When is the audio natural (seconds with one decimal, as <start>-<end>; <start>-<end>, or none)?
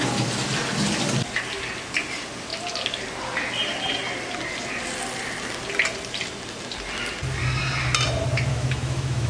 0.0-8.5